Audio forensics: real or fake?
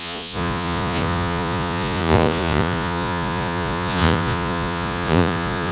fake